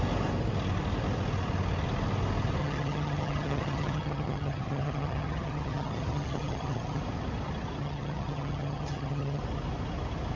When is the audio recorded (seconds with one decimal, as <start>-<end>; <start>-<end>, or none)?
0.0-2.6; 7.0-7.8; 9.4-10.4